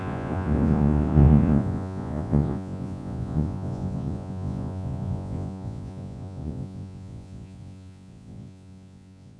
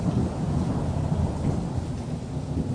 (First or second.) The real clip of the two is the second